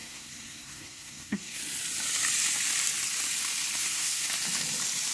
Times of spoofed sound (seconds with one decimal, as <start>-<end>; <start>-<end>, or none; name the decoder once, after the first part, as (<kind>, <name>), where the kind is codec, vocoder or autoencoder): 0.0-1.6 (codec, SNAC); 3.8-4.3